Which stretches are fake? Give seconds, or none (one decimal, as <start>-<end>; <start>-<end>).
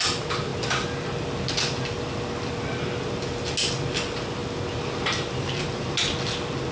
none